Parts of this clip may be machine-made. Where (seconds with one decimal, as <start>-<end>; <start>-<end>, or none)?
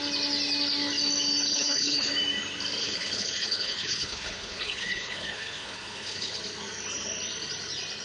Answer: 1.5-2.1; 2.8-6.4